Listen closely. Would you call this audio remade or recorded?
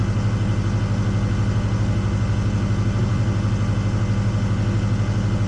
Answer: recorded